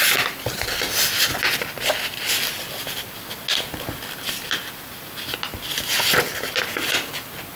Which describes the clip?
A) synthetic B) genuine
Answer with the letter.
B